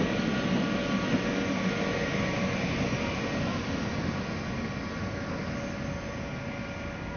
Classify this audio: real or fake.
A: real